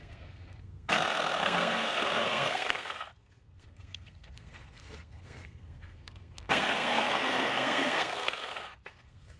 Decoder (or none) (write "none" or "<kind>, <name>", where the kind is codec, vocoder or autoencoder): codec, SNAC